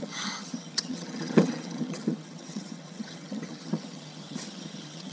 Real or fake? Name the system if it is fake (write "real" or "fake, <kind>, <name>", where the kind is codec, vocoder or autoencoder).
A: fake, vocoder, HiFi-GAN